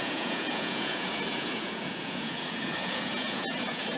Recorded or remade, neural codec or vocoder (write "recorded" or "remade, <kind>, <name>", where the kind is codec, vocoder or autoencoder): remade, vocoder, Vocos